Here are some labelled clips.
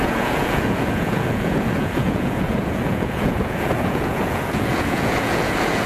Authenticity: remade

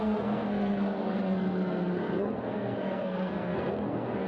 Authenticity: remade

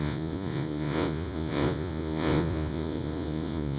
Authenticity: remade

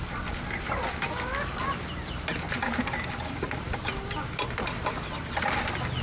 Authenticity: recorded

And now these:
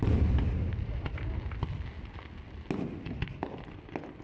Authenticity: recorded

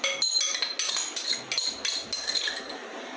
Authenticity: recorded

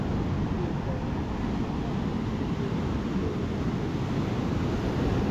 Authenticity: recorded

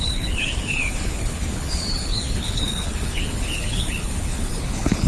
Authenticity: remade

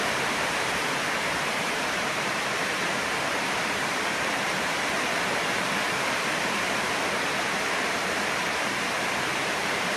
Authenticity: remade